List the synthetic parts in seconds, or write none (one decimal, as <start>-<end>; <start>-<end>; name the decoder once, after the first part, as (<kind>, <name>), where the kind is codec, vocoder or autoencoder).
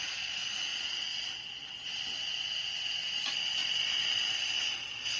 none